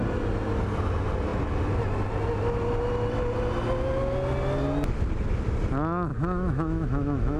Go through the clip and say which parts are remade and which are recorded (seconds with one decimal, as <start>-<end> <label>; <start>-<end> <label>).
0.0-6.1 recorded; 6.1-7.4 remade

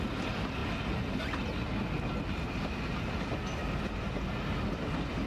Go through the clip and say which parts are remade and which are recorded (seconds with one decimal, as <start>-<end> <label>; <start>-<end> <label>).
0.0-5.3 recorded

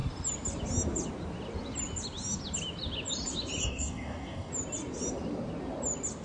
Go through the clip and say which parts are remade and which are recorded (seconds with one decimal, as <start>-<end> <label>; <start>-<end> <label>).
0.0-3.6 recorded; 3.6-4.5 remade; 4.5-6.2 recorded

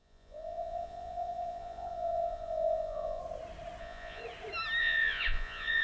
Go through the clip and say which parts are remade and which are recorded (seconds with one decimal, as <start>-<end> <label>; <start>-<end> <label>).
0.0-3.2 remade; 3.2-3.8 recorded; 3.8-4.2 remade; 4.2-4.8 recorded; 4.8-5.8 remade

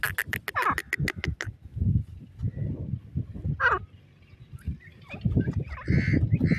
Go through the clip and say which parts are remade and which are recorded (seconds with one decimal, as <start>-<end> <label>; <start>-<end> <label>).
0.0-4.9 recorded; 4.9-5.5 remade; 5.5-6.6 recorded

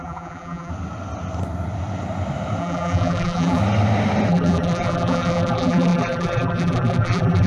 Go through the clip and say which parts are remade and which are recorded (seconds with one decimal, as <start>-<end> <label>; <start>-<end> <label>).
0.0-0.7 remade; 0.7-2.6 recorded; 2.6-3.6 remade; 3.6-4.3 recorded; 4.3-7.5 remade

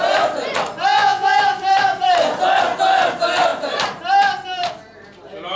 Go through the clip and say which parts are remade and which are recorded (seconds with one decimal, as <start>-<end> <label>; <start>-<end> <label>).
0.0-0.9 recorded; 0.9-1.4 remade; 1.4-5.6 recorded